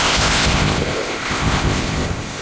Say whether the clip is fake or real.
fake